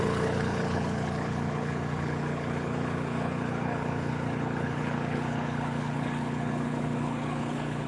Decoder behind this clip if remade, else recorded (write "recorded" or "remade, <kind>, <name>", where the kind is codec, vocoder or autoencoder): remade, codec, HILCodec